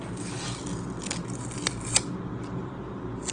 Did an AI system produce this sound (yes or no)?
no